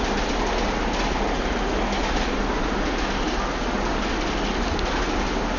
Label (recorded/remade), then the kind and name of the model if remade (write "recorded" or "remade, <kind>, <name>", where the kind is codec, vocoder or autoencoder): recorded